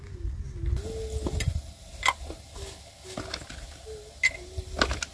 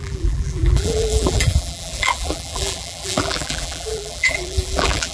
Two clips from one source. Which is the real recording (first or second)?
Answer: first